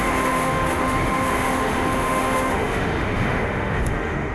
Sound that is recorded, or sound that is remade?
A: remade